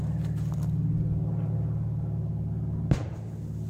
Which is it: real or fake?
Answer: real